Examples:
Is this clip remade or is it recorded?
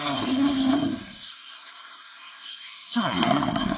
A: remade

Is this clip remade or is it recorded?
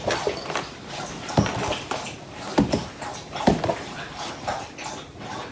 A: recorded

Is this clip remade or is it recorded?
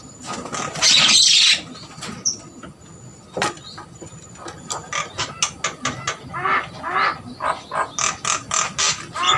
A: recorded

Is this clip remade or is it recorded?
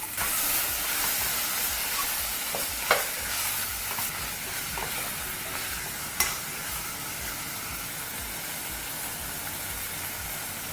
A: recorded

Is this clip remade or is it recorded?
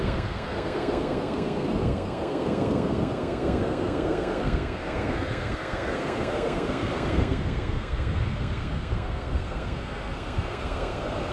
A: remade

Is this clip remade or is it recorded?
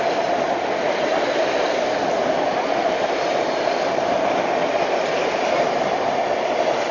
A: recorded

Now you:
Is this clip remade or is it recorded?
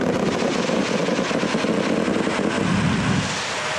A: recorded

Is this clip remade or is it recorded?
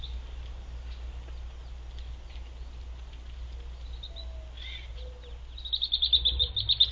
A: recorded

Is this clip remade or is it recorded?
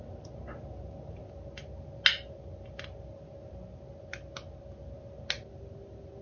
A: recorded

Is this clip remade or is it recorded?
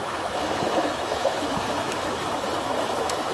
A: remade